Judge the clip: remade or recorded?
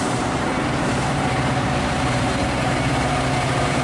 remade